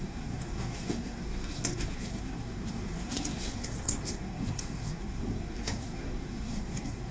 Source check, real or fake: fake